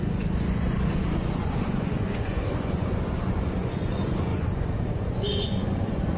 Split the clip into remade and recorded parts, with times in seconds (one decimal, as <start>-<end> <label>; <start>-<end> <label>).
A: 0.0-6.2 remade